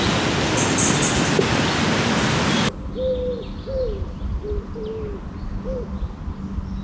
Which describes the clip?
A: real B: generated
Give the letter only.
A